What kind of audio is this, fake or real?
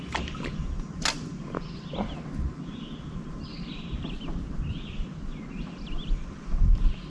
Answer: real